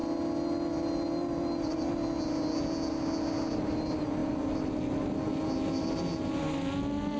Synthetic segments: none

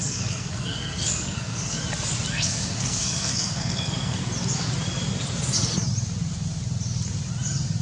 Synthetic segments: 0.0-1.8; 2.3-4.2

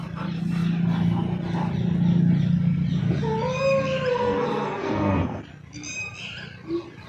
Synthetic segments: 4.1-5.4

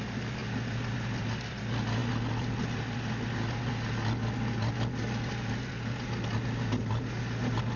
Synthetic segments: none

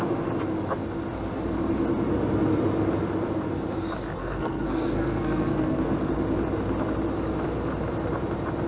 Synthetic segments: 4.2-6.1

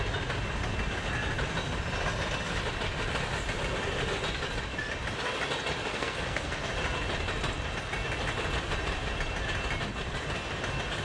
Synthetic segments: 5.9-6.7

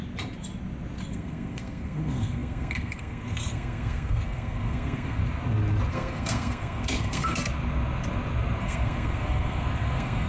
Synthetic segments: 1.1-5.2; 5.9-7.5; 8.6-10.3

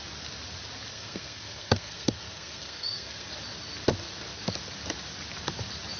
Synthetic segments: 0.9-3.3